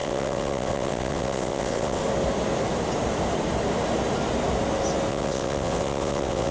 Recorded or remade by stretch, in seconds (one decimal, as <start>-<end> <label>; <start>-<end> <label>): 0.0-2.0 remade; 2.0-5.1 recorded; 5.1-6.5 remade